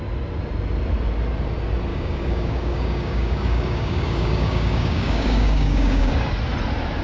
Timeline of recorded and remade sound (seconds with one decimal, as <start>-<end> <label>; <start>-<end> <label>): 0.0-1.9 recorded; 1.9-6.1 remade; 6.1-7.0 recorded